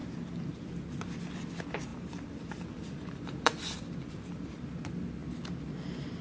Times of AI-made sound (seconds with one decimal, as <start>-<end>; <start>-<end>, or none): 0.0-0.6; 1.9-4.6